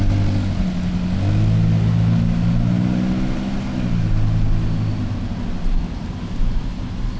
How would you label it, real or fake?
real